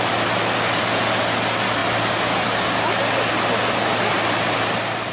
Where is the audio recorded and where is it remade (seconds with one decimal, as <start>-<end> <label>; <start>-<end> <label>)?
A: 0.0-5.1 recorded